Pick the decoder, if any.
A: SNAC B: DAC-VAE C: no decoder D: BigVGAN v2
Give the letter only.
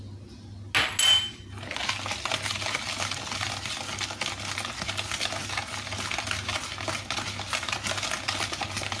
C